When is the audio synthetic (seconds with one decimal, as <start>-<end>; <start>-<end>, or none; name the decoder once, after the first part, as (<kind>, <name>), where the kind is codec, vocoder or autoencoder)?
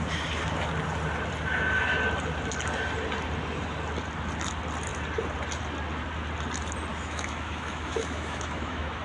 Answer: 6.9-9.0 (autoencoder, DAC-VAE)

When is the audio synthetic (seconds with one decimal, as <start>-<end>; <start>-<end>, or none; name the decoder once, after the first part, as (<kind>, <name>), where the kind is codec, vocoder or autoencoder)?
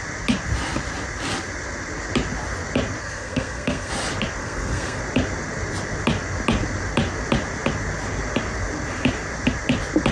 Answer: 3.0-3.9 (codec, SNAC); 4.4-5.0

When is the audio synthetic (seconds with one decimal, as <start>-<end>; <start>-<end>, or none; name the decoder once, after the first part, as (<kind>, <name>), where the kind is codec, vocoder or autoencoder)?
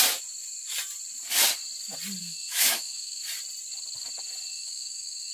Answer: 2.2-3.2 (autoencoder, DAC-VAE); 4.5-5.3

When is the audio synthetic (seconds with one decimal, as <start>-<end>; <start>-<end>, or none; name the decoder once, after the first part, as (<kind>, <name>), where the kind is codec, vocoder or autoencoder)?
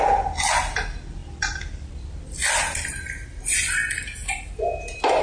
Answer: 1.2-2.5 (vocoder, BigVGAN v2); 3.5-4.0